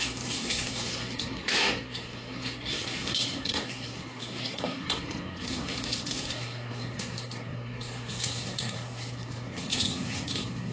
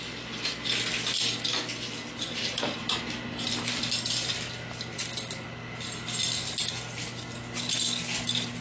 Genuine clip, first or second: second